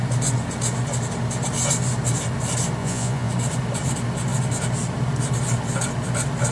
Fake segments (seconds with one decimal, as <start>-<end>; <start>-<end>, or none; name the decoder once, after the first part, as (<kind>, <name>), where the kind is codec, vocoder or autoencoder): 2.8-3.3 (vocoder, Vocos)